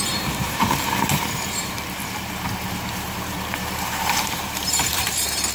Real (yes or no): no